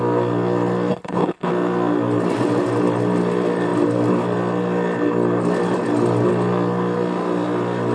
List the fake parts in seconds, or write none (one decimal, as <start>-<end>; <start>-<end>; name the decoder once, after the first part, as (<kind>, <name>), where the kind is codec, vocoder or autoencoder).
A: 0.9-1.5 (codec, HILCodec)